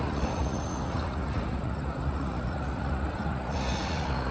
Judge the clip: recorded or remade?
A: remade